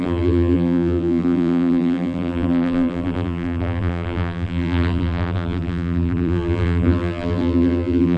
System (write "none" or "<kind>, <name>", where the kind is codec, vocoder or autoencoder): vocoder, BigVGAN v2